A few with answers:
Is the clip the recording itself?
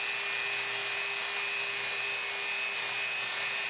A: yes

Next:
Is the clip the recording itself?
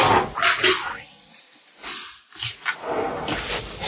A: yes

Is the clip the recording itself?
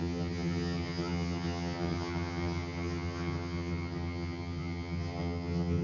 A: no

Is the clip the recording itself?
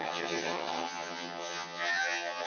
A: no